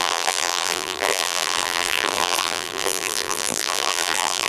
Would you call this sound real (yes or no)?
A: no